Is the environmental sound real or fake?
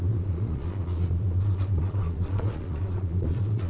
fake